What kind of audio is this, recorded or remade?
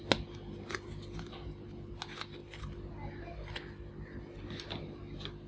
recorded